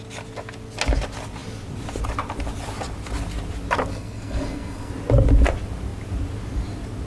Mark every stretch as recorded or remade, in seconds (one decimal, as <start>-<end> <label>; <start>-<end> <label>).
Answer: 0.0-3.9 recorded; 3.9-4.9 remade; 4.9-7.1 recorded